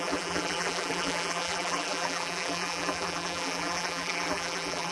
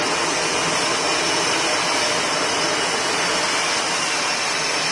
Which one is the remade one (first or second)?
first